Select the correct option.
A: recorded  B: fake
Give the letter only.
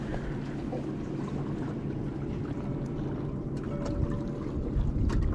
A